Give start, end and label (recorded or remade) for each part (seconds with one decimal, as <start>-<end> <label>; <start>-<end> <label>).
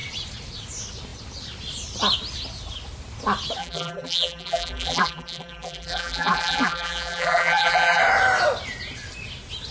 0.0-3.6 recorded; 3.6-8.0 remade; 8.0-9.7 recorded